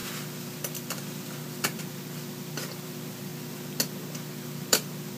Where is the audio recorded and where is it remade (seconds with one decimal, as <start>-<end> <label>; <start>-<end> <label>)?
0.0-3.3 remade; 3.3-4.3 recorded; 4.3-5.2 remade